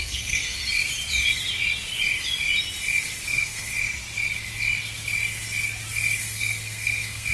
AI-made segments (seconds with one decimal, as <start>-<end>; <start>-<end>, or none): 0.0-0.6; 3.3-3.7; 6.2-7.3